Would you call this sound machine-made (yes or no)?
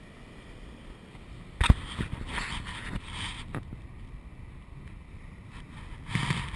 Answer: no